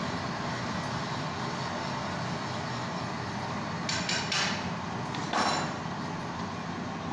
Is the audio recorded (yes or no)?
yes